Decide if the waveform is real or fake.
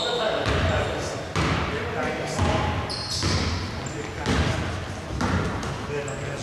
real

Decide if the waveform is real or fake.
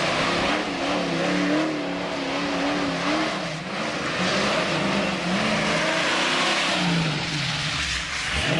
real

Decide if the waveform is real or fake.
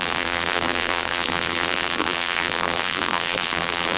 fake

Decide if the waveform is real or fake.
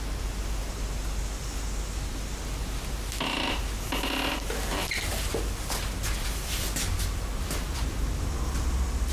real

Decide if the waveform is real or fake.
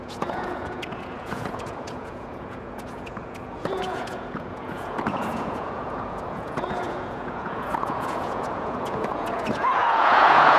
fake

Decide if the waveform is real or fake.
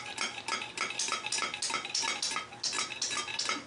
real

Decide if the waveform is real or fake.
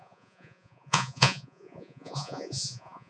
fake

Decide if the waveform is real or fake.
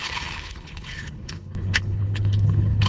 fake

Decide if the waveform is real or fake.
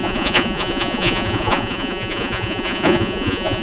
fake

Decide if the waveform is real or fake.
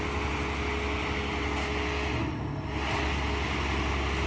real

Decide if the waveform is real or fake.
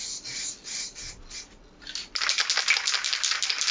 real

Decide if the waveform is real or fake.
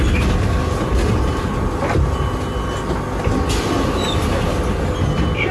real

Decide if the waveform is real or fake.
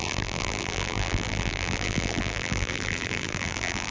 fake